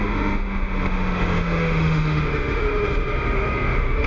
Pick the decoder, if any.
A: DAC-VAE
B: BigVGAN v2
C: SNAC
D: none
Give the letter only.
A